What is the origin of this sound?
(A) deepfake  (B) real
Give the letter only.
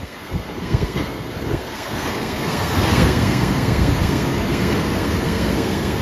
A